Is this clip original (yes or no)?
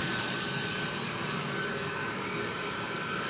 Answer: no